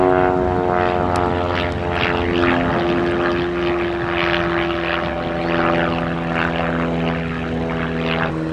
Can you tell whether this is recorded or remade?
recorded